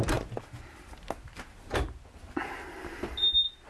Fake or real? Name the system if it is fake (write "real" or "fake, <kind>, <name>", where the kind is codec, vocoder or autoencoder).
real